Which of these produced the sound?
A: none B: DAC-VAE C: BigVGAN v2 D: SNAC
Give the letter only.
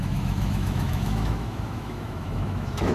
B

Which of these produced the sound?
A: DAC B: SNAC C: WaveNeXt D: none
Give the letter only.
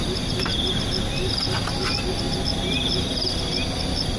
D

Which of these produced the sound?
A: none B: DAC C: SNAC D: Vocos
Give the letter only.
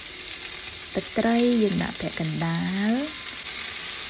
A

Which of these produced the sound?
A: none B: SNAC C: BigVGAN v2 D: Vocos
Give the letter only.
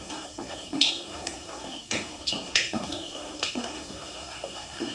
B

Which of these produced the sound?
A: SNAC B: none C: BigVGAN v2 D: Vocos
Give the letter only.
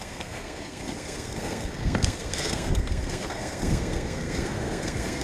A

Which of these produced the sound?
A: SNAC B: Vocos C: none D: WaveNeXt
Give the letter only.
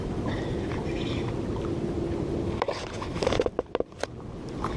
C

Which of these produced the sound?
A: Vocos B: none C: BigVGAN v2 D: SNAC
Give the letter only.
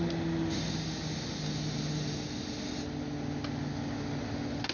B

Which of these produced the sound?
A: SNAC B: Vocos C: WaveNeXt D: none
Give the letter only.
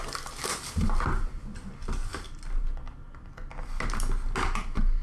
D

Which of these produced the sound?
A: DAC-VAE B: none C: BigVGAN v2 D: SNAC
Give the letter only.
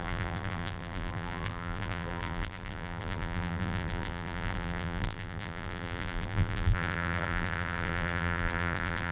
C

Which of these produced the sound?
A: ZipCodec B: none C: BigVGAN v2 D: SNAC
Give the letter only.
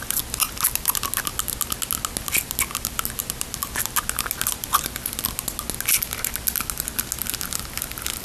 B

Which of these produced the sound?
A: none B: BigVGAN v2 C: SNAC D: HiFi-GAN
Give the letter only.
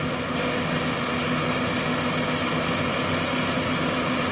A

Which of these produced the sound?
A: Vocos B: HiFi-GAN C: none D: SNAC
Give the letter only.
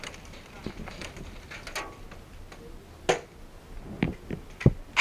C